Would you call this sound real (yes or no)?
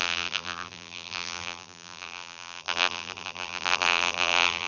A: no